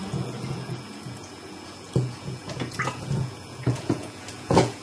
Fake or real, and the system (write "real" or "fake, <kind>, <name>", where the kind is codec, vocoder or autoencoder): fake, vocoder, Vocos